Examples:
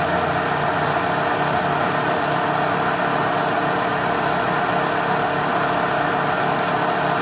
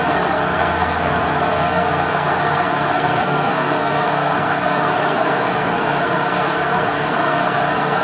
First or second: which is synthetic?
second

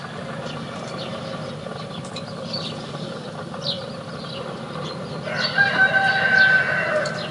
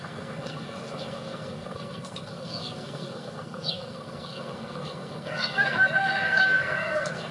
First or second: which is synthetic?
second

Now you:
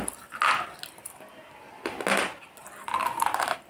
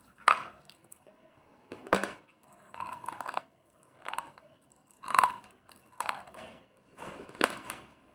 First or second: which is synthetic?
second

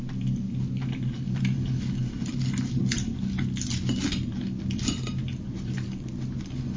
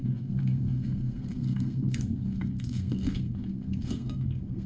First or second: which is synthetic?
second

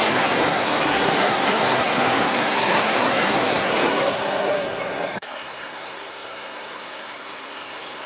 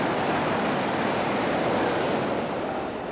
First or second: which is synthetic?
first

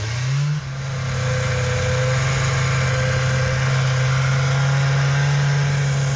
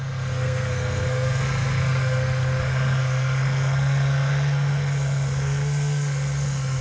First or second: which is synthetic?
second